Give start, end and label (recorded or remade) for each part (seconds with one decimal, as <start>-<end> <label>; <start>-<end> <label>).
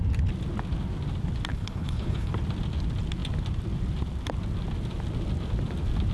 0.0-1.5 recorded; 1.5-2.3 remade; 2.3-6.1 recorded